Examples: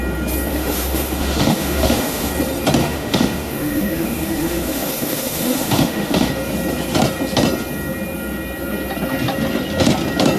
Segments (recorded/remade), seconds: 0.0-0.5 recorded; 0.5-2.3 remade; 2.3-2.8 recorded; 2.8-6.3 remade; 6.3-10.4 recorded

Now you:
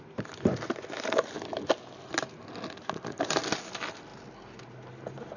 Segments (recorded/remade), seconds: 0.0-5.4 recorded